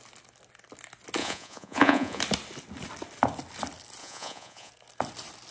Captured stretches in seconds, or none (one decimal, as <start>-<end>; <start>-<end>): 0.0-1.2; 2.2-4.0; 4.7-5.5

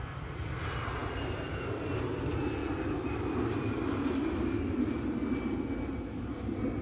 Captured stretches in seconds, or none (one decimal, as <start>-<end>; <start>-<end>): 0.0-6.8